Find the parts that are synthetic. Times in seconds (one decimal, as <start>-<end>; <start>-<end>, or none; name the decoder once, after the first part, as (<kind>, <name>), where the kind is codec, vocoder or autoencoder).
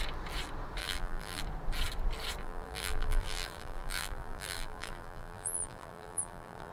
0.8-1.4 (vocoder, BigVGAN v2); 2.4-6.7